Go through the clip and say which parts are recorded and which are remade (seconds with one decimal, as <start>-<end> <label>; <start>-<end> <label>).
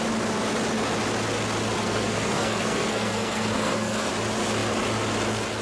0.0-1.8 recorded; 1.8-4.1 remade; 4.1-5.6 recorded